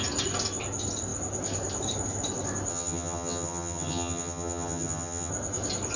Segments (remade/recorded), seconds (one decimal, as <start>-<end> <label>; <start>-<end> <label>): 0.0-2.7 recorded; 2.7-5.3 remade; 5.3-6.0 recorded

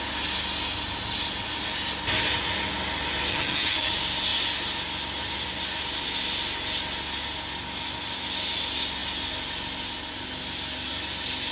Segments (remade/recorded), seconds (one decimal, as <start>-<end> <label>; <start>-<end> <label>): 0.0-3.3 recorded; 3.3-3.9 remade; 3.9-11.5 recorded

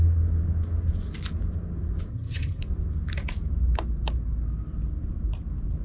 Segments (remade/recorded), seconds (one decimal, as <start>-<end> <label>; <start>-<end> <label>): 0.0-2.1 recorded; 2.1-2.6 remade; 2.6-5.8 recorded

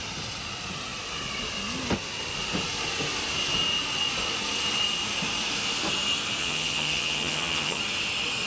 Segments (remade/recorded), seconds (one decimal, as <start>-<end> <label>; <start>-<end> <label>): 0.0-6.4 recorded; 6.4-7.8 remade; 7.8-8.5 recorded

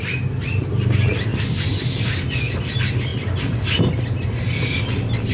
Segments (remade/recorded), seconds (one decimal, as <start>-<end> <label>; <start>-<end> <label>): 0.0-5.3 recorded

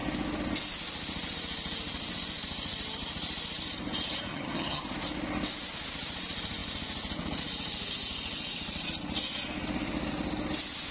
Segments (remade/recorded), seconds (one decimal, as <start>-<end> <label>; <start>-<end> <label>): 0.0-4.3 recorded; 4.3-4.8 remade; 4.8-10.9 recorded

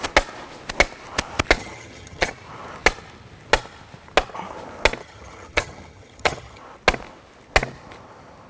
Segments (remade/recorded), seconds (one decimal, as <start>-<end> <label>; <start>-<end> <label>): 0.0-1.6 recorded; 1.6-2.3 remade; 2.3-5.0 recorded; 5.0-6.6 remade; 6.6-8.5 recorded

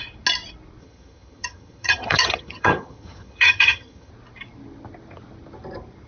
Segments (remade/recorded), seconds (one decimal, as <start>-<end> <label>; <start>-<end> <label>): 0.0-0.8 recorded; 0.8-4.1 remade; 4.1-6.1 recorded